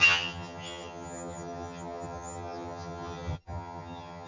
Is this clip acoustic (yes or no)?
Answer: no